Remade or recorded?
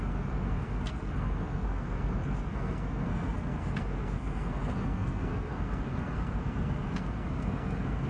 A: remade